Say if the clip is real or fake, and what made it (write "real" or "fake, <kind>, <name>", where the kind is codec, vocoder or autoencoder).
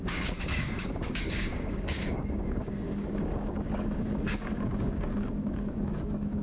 fake, codec, DAC